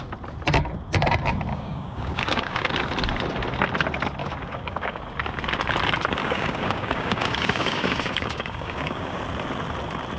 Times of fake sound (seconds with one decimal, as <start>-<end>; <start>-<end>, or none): 1.5-2.7; 4.2-5.0; 6.2-9.2